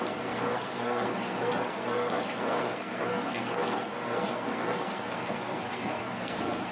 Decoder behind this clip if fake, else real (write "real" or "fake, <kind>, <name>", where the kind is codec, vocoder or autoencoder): fake, codec, SNAC